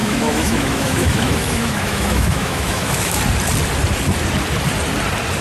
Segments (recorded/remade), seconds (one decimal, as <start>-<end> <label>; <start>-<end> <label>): 0.0-3.2 remade; 3.2-5.4 recorded